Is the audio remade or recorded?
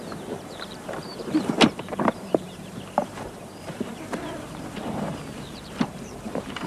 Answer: remade